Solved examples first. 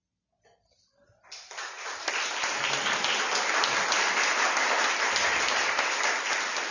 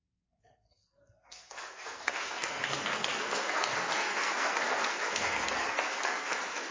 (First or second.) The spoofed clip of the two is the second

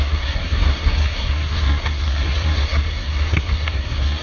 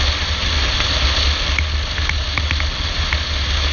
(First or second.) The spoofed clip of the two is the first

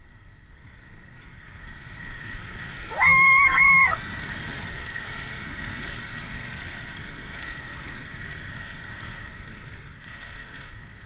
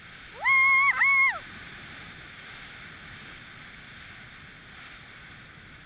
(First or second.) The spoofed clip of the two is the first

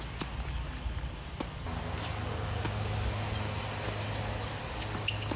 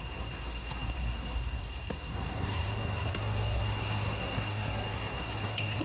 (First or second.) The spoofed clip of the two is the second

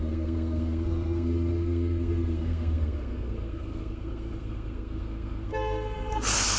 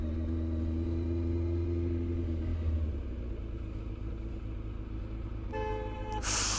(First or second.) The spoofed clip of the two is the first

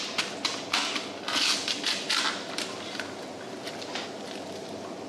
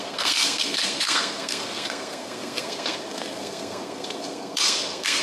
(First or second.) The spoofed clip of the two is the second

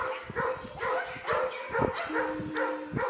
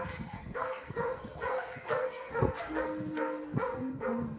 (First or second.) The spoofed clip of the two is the second